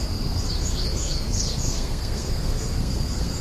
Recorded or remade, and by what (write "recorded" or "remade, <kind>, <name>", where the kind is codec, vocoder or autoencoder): remade, codec, SNAC